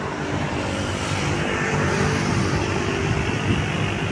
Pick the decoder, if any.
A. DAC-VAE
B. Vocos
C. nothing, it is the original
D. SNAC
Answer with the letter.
C